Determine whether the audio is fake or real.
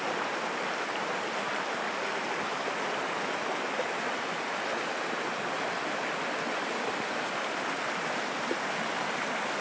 real